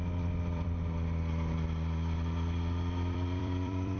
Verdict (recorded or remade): remade